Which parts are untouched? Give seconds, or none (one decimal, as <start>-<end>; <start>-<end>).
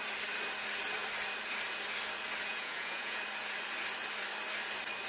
0.0-2.5; 3.2-5.1